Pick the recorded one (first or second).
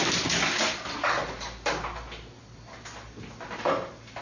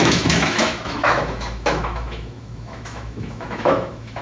first